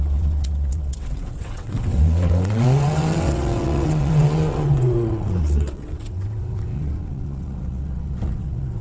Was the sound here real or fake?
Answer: fake